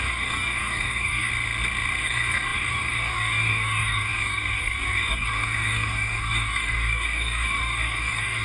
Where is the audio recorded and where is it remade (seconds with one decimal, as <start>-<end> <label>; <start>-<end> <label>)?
0.0-1.3 remade; 1.3-2.0 recorded; 2.0-8.4 remade

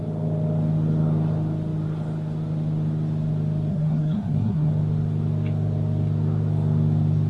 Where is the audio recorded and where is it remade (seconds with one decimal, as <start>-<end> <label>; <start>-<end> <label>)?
0.0-3.7 recorded; 3.7-4.7 remade; 4.7-7.3 recorded